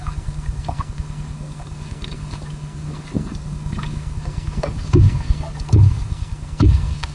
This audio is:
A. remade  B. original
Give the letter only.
A